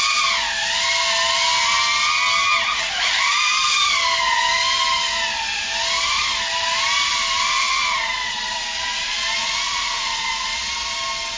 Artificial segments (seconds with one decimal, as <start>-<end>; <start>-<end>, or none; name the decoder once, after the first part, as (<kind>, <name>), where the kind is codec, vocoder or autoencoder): 2.7-3.4 (vocoder, Vocos); 7.7-10.6